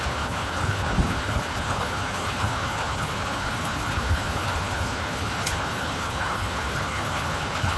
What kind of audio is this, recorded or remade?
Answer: remade